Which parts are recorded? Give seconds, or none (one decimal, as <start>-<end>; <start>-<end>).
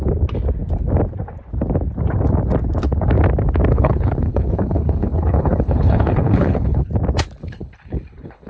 0.0-3.7; 6.9-7.4